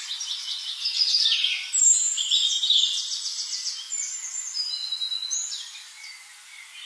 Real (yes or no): yes